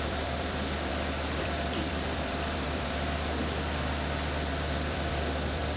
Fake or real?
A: fake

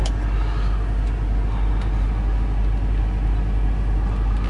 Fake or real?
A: real